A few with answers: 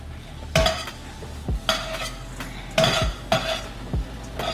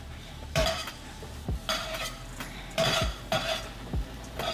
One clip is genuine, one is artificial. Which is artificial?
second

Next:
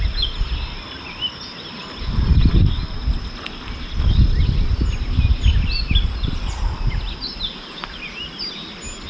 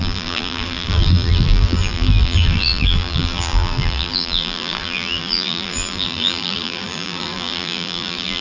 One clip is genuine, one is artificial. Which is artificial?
second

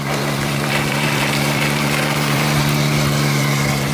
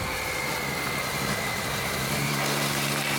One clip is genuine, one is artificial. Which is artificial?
first